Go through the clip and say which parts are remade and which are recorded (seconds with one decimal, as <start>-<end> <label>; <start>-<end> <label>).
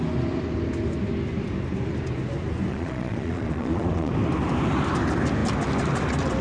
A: 0.0-2.7 recorded; 2.7-4.1 remade; 4.1-6.4 recorded